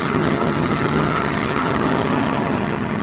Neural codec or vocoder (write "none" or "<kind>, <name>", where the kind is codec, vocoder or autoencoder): vocoder, HiFi-GAN